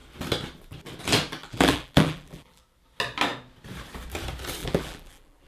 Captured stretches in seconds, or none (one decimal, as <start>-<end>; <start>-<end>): 0.0-1.4; 2.6-4.6